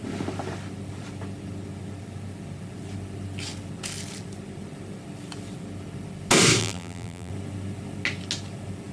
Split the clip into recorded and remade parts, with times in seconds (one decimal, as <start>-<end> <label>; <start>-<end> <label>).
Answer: 0.0-6.6 recorded; 6.6-7.3 remade; 7.3-8.9 recorded